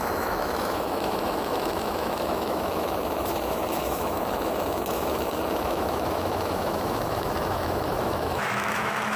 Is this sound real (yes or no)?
no